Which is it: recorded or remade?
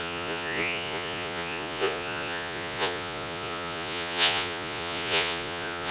remade